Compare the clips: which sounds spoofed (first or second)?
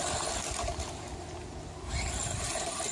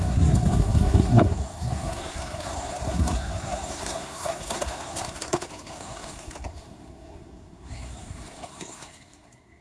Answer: second